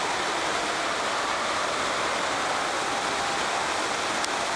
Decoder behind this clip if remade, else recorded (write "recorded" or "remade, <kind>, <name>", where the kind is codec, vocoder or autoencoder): recorded